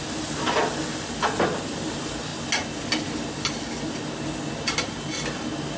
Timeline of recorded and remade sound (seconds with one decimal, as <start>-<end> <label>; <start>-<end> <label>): 0.0-5.8 recorded